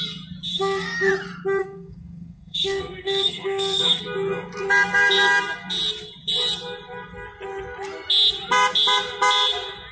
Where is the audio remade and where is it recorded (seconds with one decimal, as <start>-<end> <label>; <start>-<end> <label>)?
0.0-0.5 recorded; 0.5-1.1 remade; 1.1-1.6 recorded; 1.6-4.0 remade; 4.0-9.9 recorded